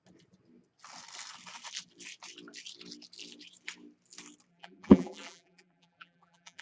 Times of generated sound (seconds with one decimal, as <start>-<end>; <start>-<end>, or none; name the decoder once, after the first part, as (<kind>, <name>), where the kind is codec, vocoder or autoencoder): 4.5-6.6 (vocoder, BigVGAN v2)